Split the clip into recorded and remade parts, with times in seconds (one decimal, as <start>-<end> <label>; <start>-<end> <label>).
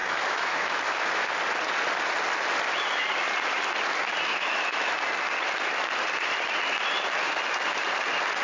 0.0-1.3 remade; 1.3-4.3 recorded; 4.3-4.9 remade; 4.9-8.4 recorded